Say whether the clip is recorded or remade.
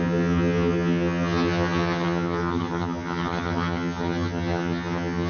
remade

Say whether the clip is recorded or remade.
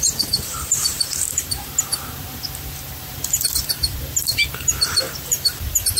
remade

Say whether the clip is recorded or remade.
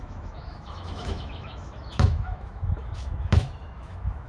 remade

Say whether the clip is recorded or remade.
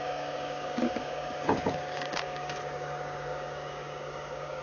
remade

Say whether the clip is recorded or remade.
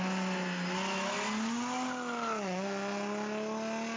recorded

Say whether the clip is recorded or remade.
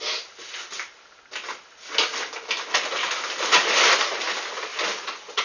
recorded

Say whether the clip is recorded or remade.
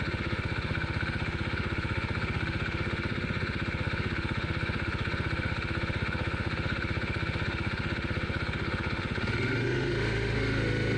remade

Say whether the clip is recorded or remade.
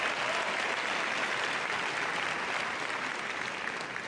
recorded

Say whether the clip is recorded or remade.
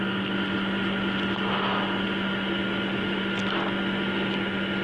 recorded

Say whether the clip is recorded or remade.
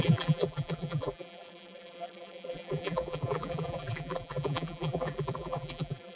remade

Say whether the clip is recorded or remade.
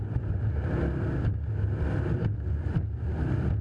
recorded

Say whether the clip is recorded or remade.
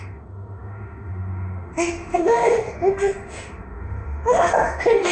remade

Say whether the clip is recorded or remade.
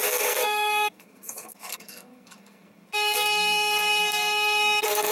remade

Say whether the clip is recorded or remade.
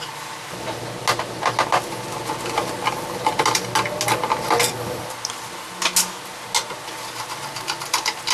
recorded